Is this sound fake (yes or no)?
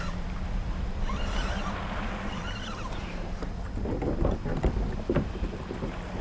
no